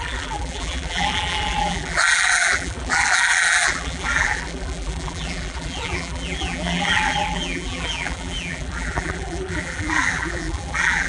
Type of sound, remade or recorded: remade